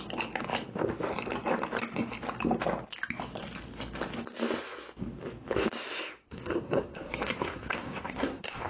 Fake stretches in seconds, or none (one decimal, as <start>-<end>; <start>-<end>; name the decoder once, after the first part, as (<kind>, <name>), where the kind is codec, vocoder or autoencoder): 6.2-8.7 (codec, SNAC)